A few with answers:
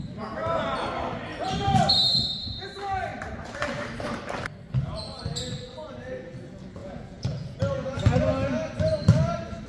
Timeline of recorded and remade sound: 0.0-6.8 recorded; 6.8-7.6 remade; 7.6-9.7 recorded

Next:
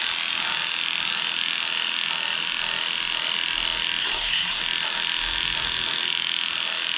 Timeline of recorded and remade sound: 0.0-4.0 recorded; 4.0-4.6 remade; 4.6-7.0 recorded

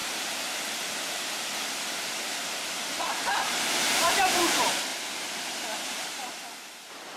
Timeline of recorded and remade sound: 0.0-4.9 remade; 4.9-5.9 recorded; 5.9-7.2 remade

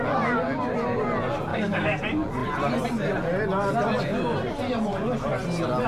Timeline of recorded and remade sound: 0.0-1.5 recorded; 1.5-2.0 remade; 2.0-5.9 recorded

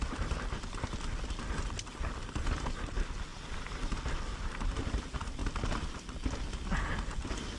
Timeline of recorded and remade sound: 0.0-3.3 recorded; 3.3-3.9 remade; 3.9-4.3 recorded; 4.3-5.0 remade; 5.0-7.6 recorded

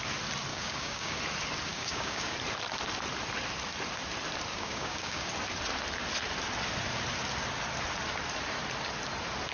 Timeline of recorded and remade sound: 0.0-0.5 recorded; 0.5-1.2 remade; 1.2-1.7 recorded; 1.7-2.3 remade; 2.3-4.5 recorded; 4.5-5.3 remade; 5.3-9.5 recorded

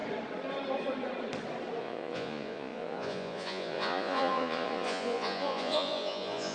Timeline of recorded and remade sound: 0.0-1.8 recorded; 1.8-6.5 remade

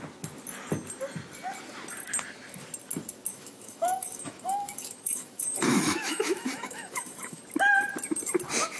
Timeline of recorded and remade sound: 0.0-3.3 recorded; 3.3-7.4 remade; 7.4-8.8 recorded